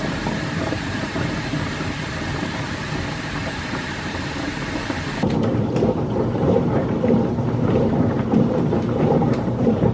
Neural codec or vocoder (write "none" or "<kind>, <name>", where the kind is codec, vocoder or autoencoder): vocoder, BigVGAN v2